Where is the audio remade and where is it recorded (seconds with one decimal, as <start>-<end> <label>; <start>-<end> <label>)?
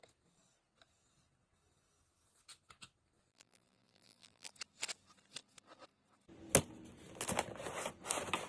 0.0-3.3 recorded; 3.3-4.5 remade; 4.5-8.5 recorded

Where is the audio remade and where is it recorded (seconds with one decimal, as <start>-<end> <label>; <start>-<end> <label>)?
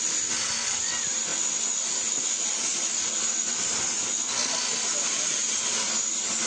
0.0-1.3 recorded; 1.3-2.1 remade; 2.1-6.5 recorded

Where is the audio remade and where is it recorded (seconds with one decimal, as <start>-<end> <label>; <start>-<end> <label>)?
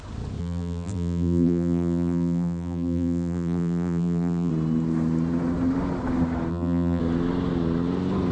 0.0-0.4 recorded; 0.4-4.5 remade; 4.5-6.5 recorded; 6.5-7.0 remade; 7.0-8.3 recorded